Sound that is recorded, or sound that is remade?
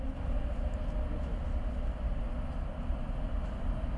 recorded